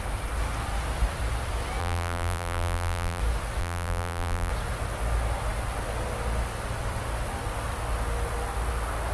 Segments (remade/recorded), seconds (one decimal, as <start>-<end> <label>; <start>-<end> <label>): 0.0-1.8 recorded; 1.8-3.2 remade; 3.2-3.6 recorded; 3.6-4.5 remade; 4.5-9.1 recorded